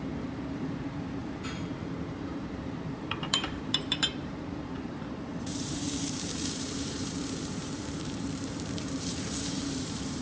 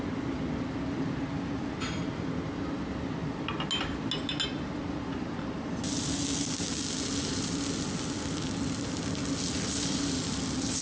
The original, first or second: second